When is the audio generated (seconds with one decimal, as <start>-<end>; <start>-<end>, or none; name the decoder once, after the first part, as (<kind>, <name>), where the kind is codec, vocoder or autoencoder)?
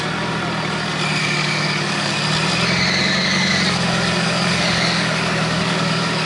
1.2-2.1 (codec, DAC); 3.0-6.3